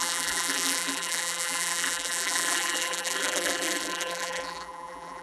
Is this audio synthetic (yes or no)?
yes